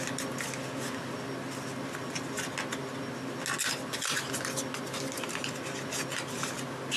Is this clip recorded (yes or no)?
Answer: yes